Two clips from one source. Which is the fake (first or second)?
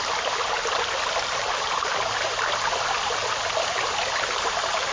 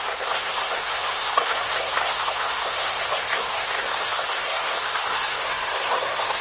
second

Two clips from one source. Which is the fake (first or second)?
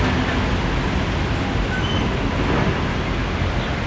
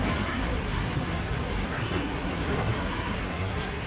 second